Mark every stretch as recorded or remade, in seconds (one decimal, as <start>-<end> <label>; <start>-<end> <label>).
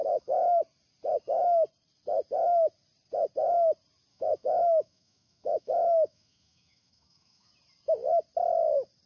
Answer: 0.0-0.6 remade; 0.6-4.1 recorded; 4.1-7.5 remade; 7.5-9.1 recorded